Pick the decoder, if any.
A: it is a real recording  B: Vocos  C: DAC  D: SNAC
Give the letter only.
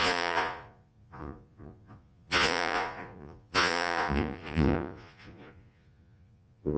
B